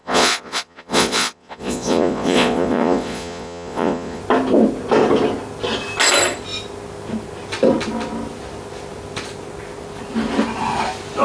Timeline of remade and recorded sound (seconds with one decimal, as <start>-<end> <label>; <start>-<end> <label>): 0.0-4.2 remade; 4.2-11.2 recorded